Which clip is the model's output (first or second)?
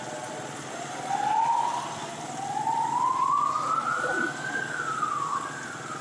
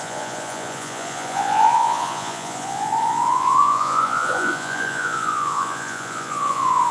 second